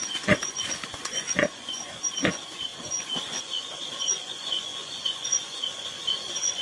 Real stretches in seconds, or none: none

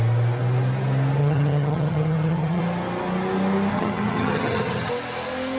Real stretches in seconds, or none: 0.0-1.2; 2.6-3.7; 4.9-5.6

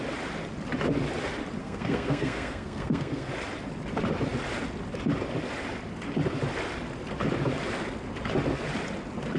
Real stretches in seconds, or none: 0.0-1.6; 3.3-9.4

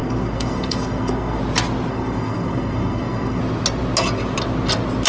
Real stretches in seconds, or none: 1.4-1.9; 3.4-5.1